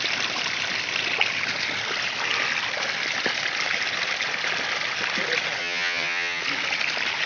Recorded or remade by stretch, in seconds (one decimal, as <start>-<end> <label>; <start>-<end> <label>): 0.0-5.6 recorded; 5.6-6.4 remade; 6.4-7.3 recorded